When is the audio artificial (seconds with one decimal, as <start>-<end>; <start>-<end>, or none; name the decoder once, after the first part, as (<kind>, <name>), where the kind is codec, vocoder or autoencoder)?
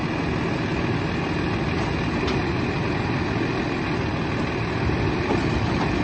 none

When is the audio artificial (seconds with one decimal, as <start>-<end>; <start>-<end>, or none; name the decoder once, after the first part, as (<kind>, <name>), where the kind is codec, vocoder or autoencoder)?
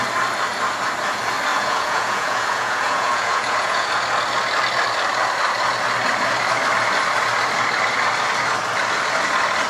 1.5-3.9 (vocoder, Vocos)